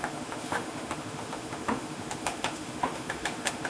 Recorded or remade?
remade